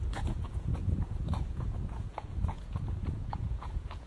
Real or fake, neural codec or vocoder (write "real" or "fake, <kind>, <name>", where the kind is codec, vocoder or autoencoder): fake, vocoder, Vocos